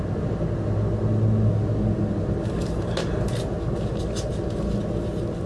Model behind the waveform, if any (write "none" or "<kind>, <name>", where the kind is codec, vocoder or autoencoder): none